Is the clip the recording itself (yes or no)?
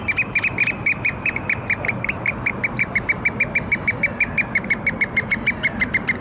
yes